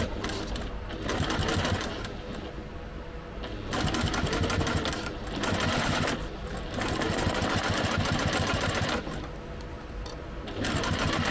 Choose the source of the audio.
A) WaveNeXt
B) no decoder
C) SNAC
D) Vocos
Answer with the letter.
B